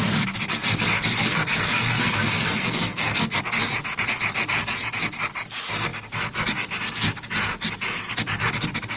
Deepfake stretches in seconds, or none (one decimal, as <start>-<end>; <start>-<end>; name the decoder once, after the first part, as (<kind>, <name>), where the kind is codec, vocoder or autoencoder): 1.3-3.4 (codec, SNAC)